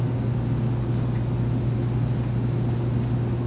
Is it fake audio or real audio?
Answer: real